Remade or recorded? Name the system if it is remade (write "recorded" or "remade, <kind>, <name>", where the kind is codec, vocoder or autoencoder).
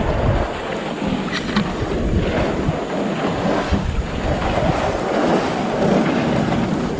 recorded